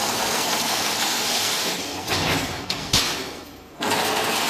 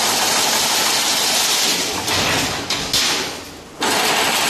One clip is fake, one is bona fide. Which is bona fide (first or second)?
second